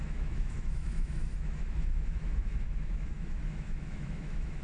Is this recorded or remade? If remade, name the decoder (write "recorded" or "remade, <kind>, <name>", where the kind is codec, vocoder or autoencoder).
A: remade, autoencoder, DAC-VAE